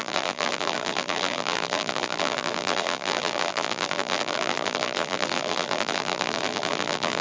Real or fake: fake